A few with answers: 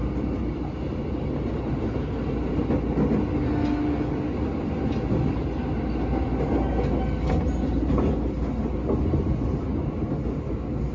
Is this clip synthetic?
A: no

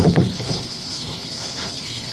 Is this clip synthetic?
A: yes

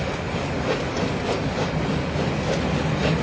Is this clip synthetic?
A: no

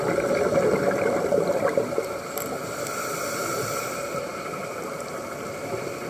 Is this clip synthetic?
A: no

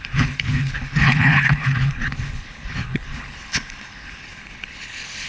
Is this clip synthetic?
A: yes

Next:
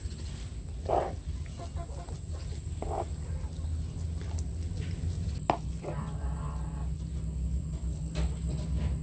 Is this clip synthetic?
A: no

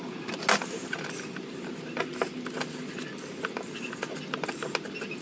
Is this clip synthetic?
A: no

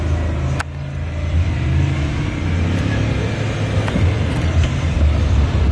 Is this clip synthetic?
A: no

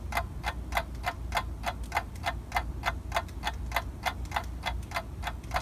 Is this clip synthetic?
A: no